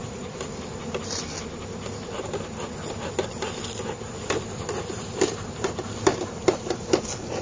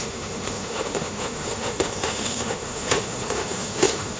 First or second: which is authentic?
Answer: first